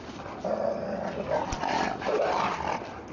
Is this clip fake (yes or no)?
no